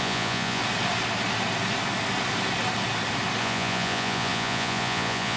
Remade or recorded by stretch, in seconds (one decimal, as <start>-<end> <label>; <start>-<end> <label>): 0.0-0.6 remade; 0.6-3.4 recorded; 3.4-5.4 remade